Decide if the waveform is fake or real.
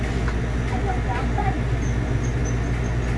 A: real